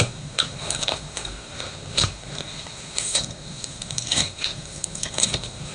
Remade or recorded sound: remade